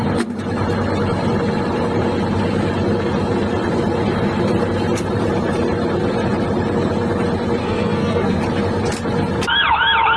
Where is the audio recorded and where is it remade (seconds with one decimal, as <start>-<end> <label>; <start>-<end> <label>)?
0.0-7.6 recorded; 7.6-8.4 remade; 8.4-10.2 recorded